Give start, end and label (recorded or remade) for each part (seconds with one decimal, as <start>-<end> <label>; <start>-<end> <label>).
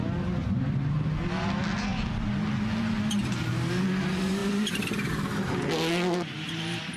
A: 0.0-0.4 recorded; 0.4-1.1 remade; 1.1-4.4 recorded; 4.4-5.1 remade; 5.1-7.0 recorded